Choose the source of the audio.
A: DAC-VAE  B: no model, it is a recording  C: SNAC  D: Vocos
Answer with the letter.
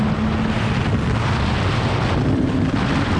B